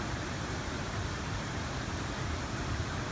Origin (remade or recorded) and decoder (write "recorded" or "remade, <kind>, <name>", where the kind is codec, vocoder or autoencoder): remade, vocoder, BigVGAN v2